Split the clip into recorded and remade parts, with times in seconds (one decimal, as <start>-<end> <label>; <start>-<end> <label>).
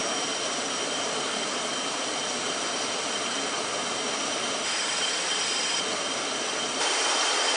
0.0-7.6 recorded